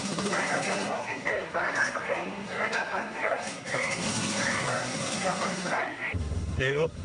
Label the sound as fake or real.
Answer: fake